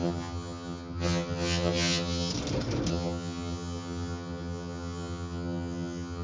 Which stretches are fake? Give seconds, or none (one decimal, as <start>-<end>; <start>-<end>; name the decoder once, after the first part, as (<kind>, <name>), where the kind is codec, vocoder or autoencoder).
0.0-2.3 (vocoder, HiFi-GAN); 2.9-6.2

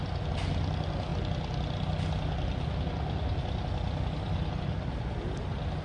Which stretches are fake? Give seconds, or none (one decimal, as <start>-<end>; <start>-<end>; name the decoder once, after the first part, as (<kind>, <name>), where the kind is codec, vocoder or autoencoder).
none

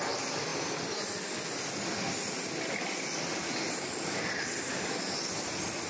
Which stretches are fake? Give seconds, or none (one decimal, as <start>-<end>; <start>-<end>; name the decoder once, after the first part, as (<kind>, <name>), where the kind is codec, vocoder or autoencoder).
none